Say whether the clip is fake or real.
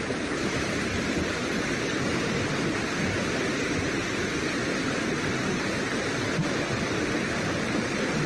real